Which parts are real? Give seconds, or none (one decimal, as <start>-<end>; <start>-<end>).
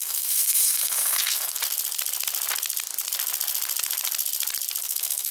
1.6-4.8